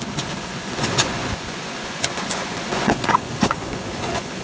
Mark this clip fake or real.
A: fake